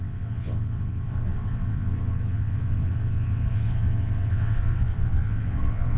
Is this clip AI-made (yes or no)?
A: yes